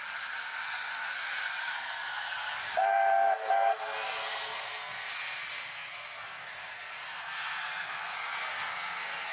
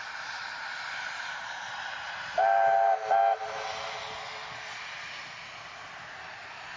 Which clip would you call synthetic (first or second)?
first